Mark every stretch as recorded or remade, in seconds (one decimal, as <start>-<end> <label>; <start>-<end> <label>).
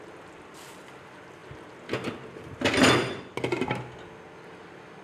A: 0.0-5.0 recorded